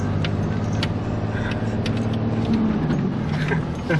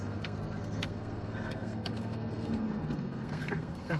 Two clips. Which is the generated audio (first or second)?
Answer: second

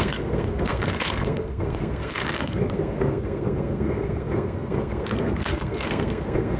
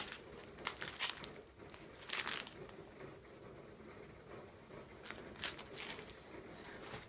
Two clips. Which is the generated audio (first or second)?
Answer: first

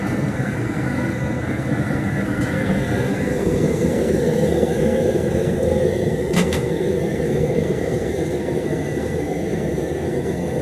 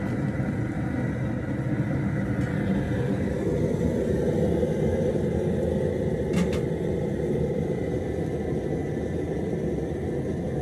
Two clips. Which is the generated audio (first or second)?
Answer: first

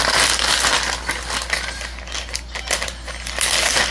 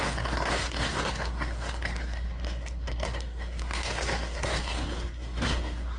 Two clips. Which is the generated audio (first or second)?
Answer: second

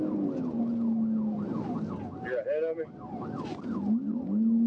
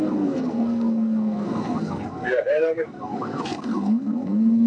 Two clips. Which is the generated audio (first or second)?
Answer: second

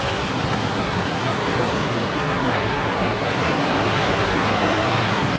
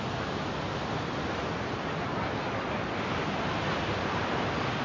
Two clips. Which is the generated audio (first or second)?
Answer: first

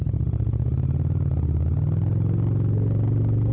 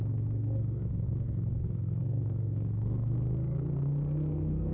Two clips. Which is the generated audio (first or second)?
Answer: second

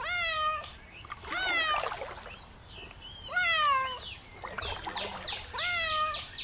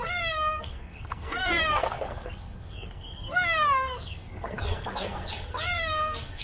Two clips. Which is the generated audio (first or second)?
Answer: second